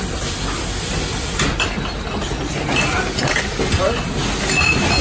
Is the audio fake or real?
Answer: real